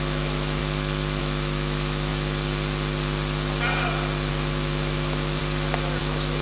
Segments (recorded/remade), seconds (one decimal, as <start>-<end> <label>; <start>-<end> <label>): 0.0-0.6 remade; 0.6-1.2 recorded; 1.2-2.1 remade; 2.1-4.3 recorded; 4.3-5.4 remade; 5.4-6.0 recorded; 6.0-6.4 remade